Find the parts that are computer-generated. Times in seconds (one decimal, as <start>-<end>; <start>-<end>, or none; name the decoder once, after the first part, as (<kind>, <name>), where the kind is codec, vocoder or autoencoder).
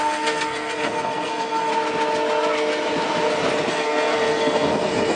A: 0.0-1.7 (codec, SNAC); 3.7-5.2